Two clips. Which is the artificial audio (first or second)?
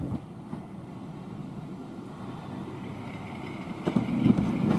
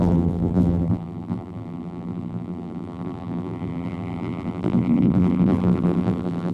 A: second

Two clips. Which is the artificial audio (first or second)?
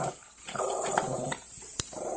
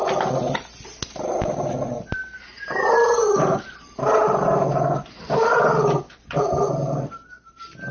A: first